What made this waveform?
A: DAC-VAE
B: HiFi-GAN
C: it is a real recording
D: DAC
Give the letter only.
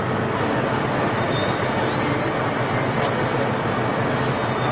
C